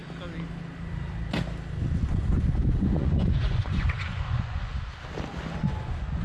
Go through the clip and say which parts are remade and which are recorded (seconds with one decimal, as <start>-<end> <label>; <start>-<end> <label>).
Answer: 0.0-2.1 recorded; 2.1-4.7 remade; 4.7-5.6 recorded; 5.6-6.2 remade